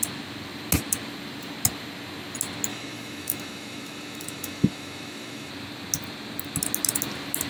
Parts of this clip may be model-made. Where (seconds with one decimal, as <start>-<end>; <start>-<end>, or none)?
2.7-5.5